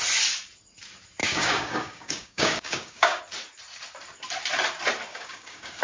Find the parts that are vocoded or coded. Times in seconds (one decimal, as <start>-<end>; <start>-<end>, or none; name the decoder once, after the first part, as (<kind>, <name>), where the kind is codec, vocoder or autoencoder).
1.2-3.2 (codec, DAC); 5.1-5.8